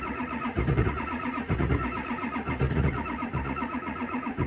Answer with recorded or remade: remade